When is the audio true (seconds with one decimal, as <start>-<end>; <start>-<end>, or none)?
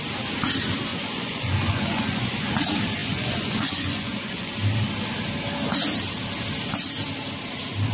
0.0-0.9; 2.5-3.0; 4.5-7.9